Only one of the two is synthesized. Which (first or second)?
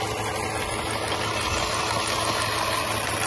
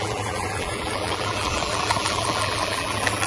second